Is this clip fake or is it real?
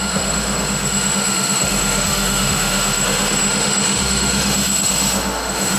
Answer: fake